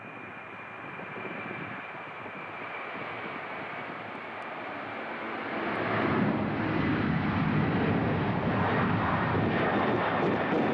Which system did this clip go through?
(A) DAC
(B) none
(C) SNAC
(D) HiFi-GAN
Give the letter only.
B